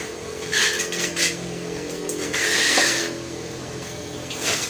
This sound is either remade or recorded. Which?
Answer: remade